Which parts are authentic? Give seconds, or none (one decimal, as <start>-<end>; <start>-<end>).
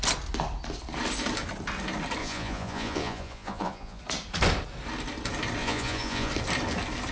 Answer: 0.0-2.2; 4.0-5.6; 6.3-7.1